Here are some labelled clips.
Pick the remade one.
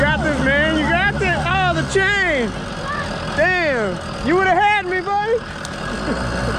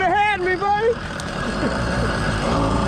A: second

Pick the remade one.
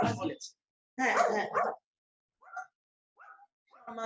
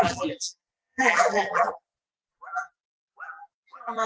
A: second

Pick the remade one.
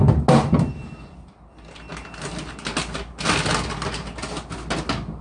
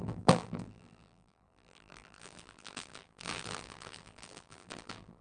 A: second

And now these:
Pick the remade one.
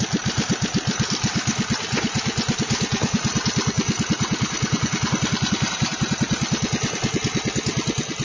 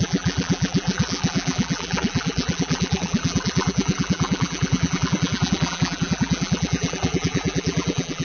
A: second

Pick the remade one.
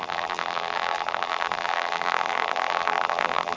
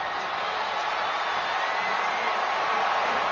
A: first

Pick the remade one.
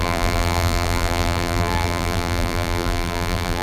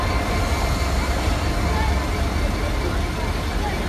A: first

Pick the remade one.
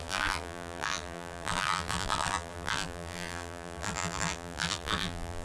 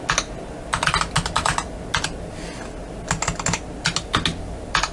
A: first